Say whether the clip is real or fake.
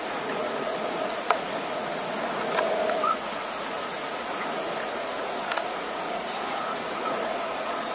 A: fake